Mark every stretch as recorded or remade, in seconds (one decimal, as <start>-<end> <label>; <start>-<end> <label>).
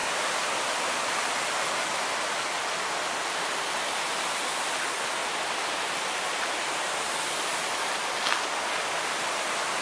0.0-9.8 recorded